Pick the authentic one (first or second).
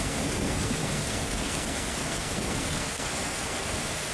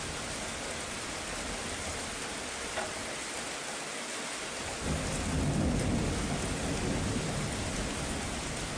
second